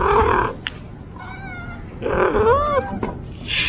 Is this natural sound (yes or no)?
yes